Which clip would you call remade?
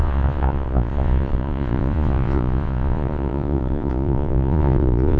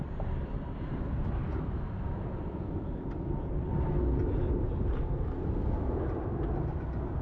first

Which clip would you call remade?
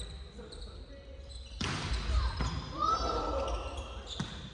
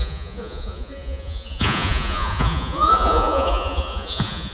second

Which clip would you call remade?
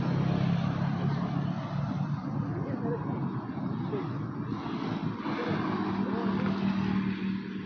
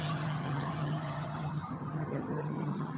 second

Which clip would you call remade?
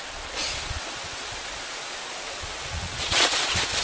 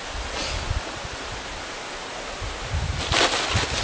first